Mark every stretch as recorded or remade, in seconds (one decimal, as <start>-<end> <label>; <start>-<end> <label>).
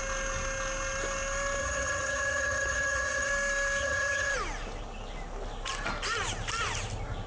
0.0-1.6 recorded; 1.6-3.3 remade; 3.3-3.8 recorded; 3.8-4.3 remade; 4.3-7.3 recorded